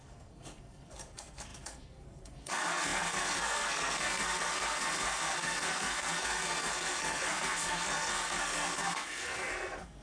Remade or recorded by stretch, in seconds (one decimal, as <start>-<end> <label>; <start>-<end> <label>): 0.0-10.0 remade